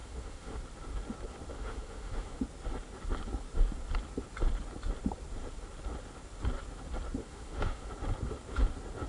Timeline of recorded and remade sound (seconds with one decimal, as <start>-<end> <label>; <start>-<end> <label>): 0.0-0.6 remade; 0.6-1.5 recorded; 1.5-2.4 remade; 2.4-7.2 recorded; 7.2-7.9 remade; 7.9-9.1 recorded